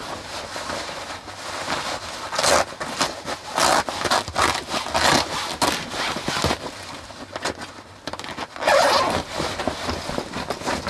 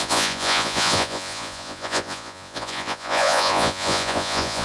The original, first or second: first